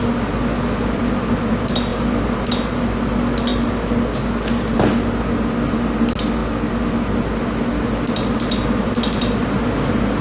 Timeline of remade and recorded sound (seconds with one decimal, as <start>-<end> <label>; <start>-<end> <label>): 0.0-10.2 recorded